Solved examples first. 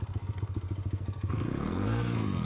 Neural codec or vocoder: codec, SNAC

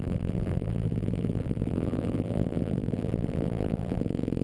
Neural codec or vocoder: vocoder, BigVGAN v2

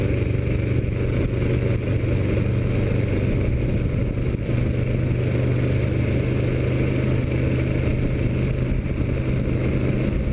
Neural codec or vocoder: none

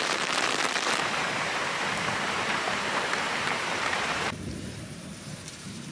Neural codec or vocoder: vocoder, BigVGAN v2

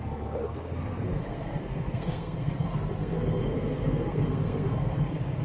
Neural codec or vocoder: codec, SNAC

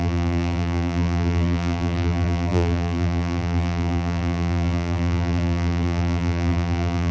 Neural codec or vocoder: vocoder, BigVGAN v2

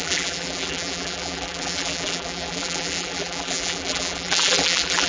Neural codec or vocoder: vocoder, BigVGAN v2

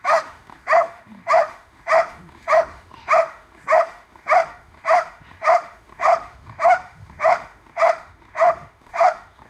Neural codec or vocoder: autoencoder, DAC-VAE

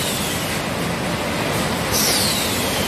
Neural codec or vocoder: none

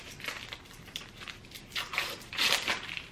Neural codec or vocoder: none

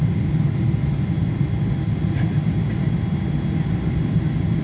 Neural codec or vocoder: none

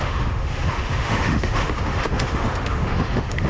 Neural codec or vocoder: autoencoder, DAC-VAE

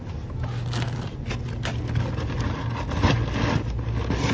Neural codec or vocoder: none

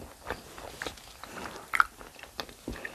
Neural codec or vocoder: none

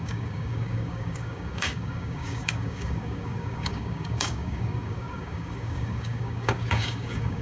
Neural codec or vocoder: codec, DAC